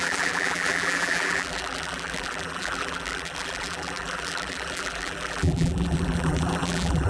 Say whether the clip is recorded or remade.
remade